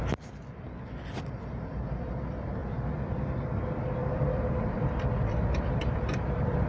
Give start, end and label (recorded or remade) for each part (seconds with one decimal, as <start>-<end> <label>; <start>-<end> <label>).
0.0-2.6 recorded; 2.6-3.3 remade; 3.3-4.0 recorded; 4.0-6.7 remade